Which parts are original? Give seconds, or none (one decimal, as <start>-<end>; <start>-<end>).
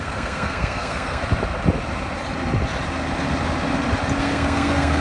1.2-4.2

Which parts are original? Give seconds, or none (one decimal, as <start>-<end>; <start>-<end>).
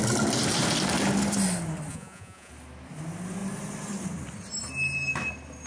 0.0-1.9; 2.5-5.7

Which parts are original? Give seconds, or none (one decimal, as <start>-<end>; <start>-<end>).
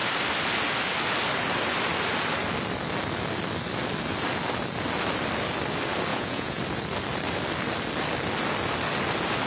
0.0-6.1; 6.6-9.5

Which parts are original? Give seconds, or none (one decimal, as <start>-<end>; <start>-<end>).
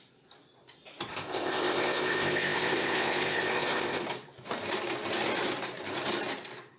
0.0-1.1; 4.0-6.8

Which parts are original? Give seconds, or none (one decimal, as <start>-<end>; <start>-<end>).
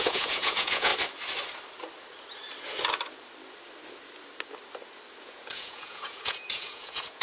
0.9-5.2